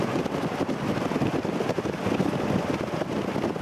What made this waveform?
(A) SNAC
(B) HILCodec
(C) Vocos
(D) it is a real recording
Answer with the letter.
D